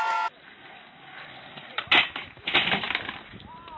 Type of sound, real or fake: real